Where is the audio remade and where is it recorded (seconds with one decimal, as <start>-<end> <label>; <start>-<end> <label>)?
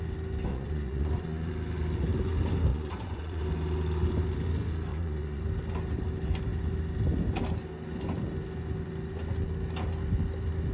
0.0-0.5 recorded; 0.5-1.5 remade; 1.5-2.7 recorded; 2.7-3.4 remade; 3.4-4.9 recorded; 4.9-5.4 remade; 5.4-10.7 recorded